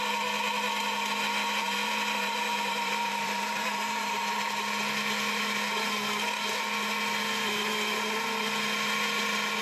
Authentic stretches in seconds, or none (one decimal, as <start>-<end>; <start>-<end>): 0.0-1.6; 4.4-9.6